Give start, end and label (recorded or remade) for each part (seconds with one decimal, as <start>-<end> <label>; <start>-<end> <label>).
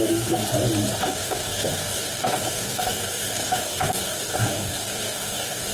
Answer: 0.0-0.4 remade; 0.4-1.0 recorded; 1.0-5.7 remade